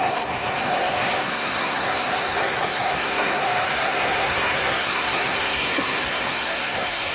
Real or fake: fake